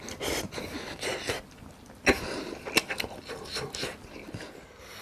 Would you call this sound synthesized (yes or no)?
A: no